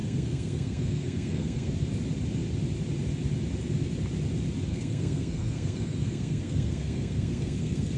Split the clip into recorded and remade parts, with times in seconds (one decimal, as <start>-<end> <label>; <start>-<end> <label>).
0.0-1.7 remade; 1.7-4.7 recorded; 4.7-8.0 remade